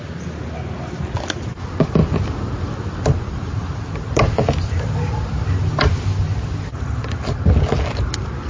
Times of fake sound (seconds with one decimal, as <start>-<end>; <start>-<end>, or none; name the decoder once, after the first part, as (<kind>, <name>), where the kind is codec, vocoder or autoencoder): none